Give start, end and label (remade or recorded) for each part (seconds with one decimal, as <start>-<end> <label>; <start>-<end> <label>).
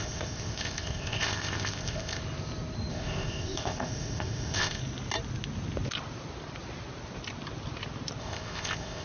0.0-2.2 remade; 2.2-2.9 recorded; 2.9-4.8 remade; 4.8-8.2 recorded; 8.2-9.0 remade